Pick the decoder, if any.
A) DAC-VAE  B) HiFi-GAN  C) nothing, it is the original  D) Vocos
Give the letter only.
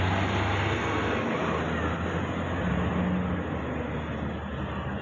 C